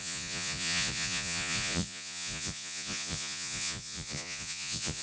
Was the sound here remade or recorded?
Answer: remade